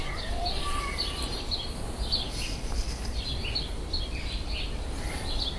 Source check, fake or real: real